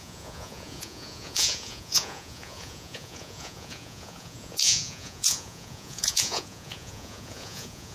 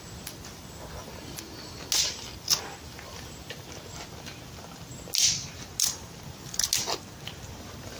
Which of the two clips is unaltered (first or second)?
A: second